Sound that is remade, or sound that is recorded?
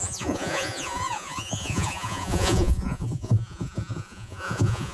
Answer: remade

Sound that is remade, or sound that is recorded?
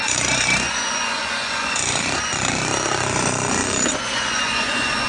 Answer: remade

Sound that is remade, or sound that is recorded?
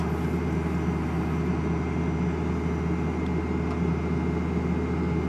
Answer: recorded